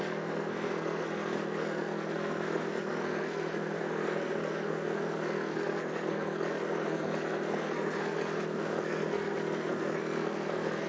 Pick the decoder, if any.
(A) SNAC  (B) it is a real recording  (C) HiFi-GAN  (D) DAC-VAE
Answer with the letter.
A